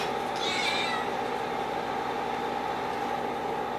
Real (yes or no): yes